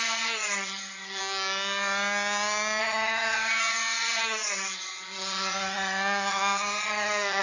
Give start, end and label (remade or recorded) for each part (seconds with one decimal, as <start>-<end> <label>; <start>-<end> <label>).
0.0-1.2 remade; 1.2-2.8 recorded; 2.8-7.4 remade